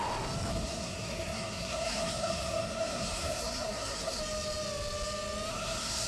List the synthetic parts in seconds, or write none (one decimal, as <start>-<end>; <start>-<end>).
0.5-4.2; 5.5-6.1